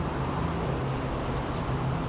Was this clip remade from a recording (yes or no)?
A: no